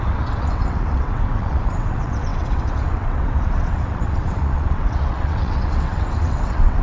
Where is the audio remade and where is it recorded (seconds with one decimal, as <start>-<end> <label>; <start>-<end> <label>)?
0.0-6.8 remade